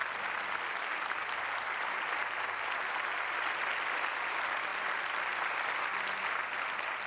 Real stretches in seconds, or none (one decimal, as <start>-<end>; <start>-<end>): 0.0-7.1